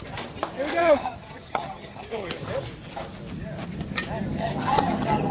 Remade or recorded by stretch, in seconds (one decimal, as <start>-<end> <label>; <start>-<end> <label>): 0.0-0.8 recorded; 0.8-2.3 remade; 2.3-4.4 recorded; 4.4-5.3 remade